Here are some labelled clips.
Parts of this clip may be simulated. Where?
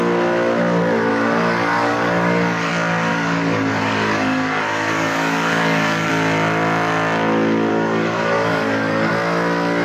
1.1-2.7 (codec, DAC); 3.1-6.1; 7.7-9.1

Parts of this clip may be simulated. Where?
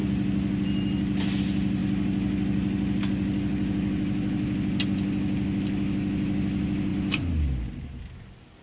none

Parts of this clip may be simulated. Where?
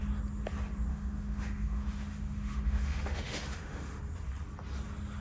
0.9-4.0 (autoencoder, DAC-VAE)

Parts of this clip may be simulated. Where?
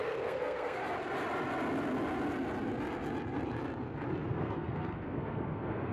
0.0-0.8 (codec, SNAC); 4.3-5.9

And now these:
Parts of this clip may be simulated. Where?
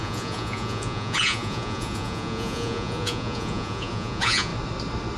0.0-4.5 (vocoder, Vocos)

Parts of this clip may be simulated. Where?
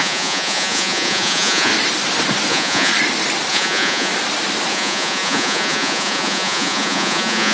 0.0-1.7 (vocoder, Vocos); 2.5-2.9; 3.5-4.1; 4.7-7.5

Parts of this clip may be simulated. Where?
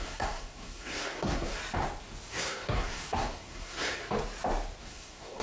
0.0-1.6 (codec, SNAC); 2.3-4.0; 4.8-5.4